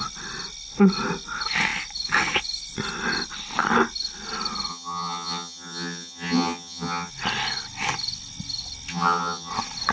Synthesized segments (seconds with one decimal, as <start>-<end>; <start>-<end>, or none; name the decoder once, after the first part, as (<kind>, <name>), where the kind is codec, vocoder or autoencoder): 4.7-7.1 (vocoder, HiFi-GAN); 8.9-9.5